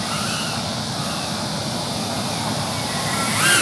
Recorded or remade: recorded